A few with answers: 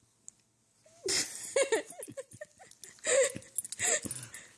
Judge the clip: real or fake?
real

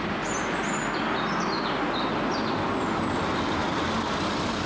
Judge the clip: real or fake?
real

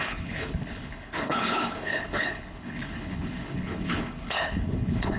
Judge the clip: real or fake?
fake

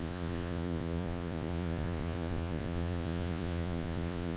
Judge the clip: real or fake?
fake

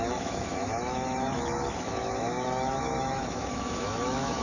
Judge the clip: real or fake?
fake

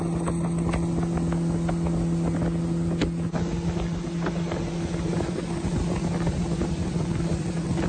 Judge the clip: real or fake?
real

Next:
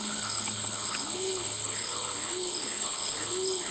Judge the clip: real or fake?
fake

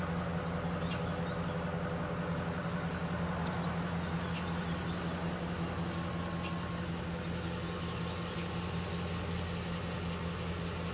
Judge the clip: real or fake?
real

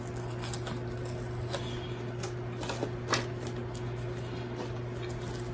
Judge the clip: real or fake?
real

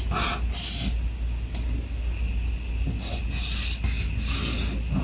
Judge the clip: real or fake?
real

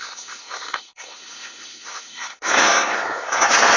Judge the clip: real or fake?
fake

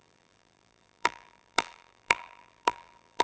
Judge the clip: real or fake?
fake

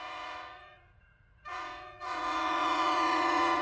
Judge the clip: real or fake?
fake